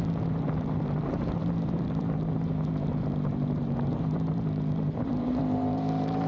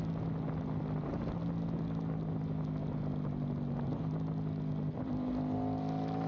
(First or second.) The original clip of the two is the second